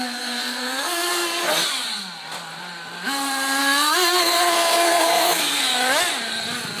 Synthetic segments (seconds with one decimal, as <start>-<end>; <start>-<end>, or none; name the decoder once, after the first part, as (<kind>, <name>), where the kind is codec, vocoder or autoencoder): 0.0-1.1 (codec, SNAC); 3.6-5.7